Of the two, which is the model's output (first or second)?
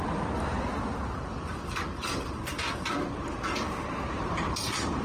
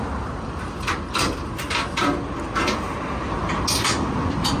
first